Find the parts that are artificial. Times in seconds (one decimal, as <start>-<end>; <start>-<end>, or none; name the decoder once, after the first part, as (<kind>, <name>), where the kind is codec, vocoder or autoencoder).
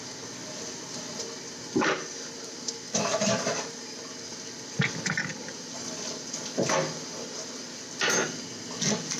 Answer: none